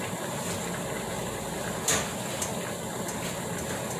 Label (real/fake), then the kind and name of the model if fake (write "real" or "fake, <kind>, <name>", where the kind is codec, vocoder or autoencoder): real